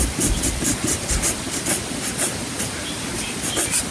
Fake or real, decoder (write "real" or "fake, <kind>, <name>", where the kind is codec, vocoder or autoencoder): real